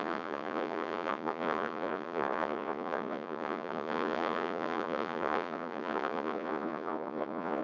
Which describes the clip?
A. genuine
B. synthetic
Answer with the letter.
B